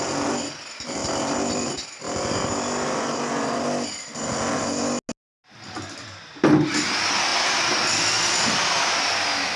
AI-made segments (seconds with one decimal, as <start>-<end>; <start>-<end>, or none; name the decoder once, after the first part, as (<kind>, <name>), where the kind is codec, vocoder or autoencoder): none